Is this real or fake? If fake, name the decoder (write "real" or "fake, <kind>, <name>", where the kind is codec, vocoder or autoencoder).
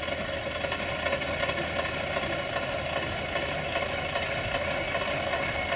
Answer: real